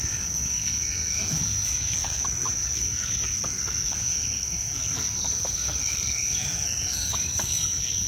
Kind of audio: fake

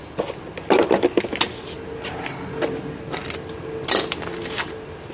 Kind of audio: real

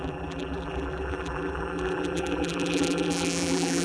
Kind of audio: fake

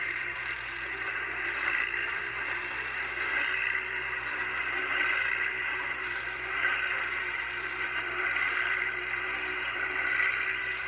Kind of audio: fake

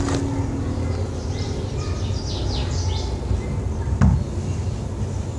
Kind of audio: real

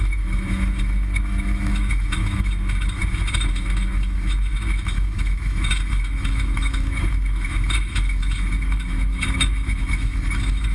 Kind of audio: fake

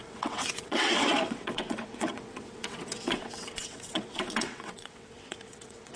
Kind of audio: fake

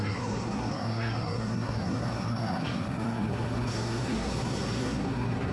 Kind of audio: fake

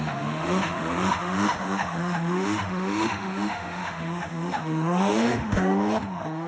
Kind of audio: fake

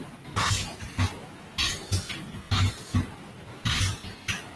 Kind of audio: real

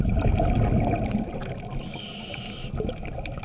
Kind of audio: real